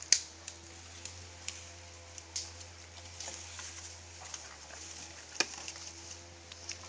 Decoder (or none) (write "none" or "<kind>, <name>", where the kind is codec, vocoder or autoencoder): none